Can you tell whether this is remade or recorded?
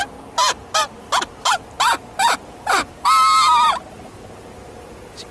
recorded